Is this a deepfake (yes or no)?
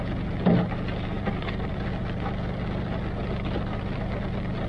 no